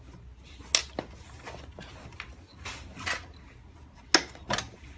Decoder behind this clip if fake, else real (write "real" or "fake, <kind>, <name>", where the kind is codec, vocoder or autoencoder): real